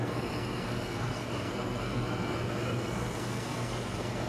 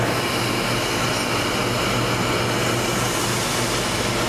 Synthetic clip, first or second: first